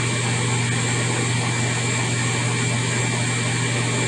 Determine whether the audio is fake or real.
real